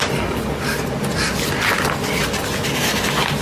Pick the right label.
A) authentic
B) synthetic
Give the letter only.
A